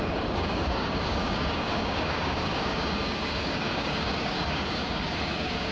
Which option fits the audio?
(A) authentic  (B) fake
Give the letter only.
B